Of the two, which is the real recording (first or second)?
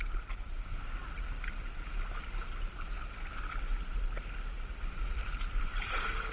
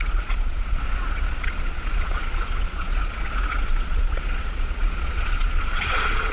first